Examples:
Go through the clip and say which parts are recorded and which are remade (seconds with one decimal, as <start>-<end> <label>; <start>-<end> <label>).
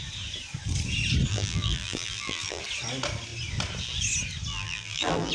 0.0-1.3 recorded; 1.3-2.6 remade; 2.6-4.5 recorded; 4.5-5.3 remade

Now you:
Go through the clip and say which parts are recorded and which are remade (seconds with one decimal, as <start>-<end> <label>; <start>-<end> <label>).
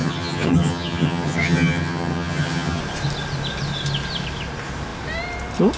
0.0-2.8 remade; 2.8-5.8 recorded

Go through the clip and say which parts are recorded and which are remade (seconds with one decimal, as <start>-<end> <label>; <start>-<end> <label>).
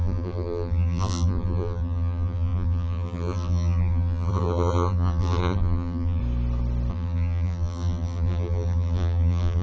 0.0-6.2 remade; 6.2-6.9 recorded; 6.9-9.6 remade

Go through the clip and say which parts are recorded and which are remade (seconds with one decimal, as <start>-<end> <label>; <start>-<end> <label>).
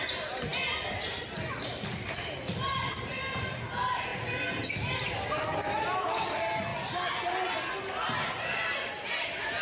0.0-9.6 recorded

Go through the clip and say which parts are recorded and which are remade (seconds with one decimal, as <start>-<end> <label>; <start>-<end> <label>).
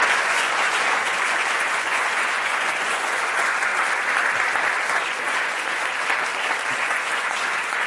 0.0-3.7 remade; 3.7-4.9 recorded; 4.9-5.8 remade; 5.8-6.7 recorded; 6.7-7.9 remade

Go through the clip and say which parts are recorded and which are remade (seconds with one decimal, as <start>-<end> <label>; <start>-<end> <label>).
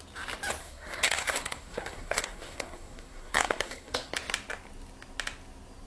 0.0-0.6 recorded; 0.6-4.1 remade; 4.1-5.9 recorded